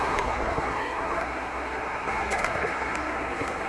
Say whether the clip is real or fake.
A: fake